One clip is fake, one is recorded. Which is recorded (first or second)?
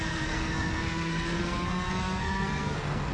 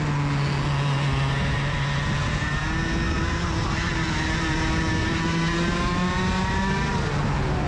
second